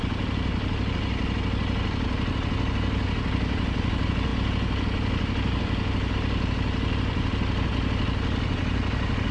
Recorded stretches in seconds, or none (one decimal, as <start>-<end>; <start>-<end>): 0.0-9.3